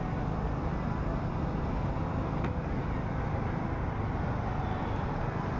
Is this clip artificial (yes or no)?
no